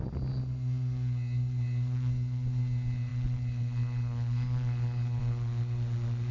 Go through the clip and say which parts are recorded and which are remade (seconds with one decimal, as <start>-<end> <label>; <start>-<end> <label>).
0.0-6.3 recorded